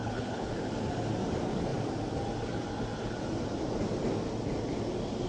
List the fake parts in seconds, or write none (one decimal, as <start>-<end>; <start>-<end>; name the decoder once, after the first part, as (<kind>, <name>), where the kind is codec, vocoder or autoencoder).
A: 0.0-0.7 (codec, HILCodec)